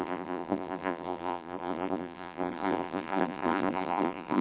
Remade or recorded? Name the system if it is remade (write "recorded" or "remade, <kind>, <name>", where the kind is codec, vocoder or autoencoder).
remade, vocoder, BigVGAN v2